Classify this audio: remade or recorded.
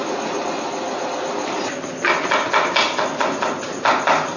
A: recorded